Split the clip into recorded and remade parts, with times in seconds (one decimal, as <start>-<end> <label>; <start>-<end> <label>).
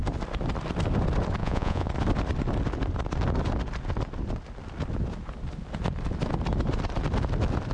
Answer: 0.0-1.4 recorded; 1.4-1.9 remade; 1.9-7.7 recorded